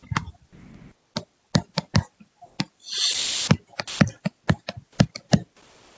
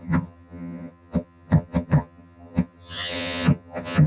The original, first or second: first